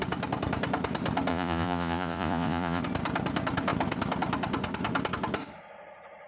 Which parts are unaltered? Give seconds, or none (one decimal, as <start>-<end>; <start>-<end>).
0.0-1.3; 2.8-6.3